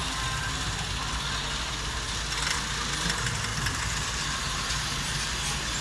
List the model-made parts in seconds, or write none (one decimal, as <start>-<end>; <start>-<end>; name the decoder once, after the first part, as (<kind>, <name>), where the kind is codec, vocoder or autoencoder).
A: 3.5-5.0 (vocoder, BigVGAN v2)